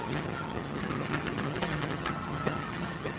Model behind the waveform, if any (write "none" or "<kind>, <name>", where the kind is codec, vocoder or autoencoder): vocoder, HiFi-GAN